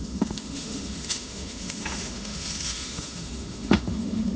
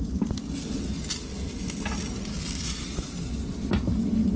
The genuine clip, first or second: second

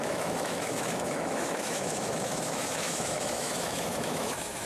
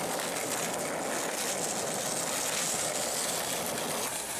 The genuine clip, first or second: second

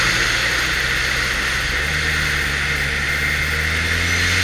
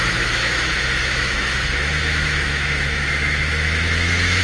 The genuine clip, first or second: first